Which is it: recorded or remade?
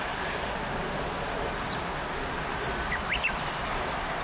recorded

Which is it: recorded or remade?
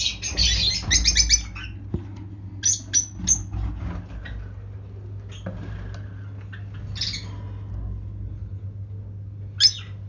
recorded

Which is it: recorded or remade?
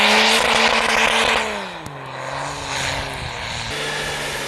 recorded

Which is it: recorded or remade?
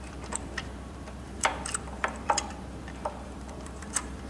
remade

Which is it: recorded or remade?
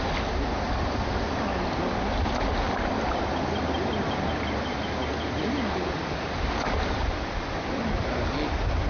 recorded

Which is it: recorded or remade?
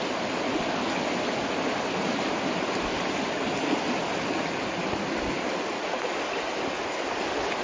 recorded